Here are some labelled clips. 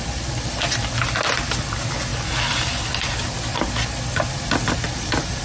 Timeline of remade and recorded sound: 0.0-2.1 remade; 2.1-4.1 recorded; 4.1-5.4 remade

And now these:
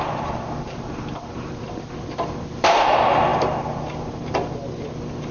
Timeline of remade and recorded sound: 0.0-5.3 remade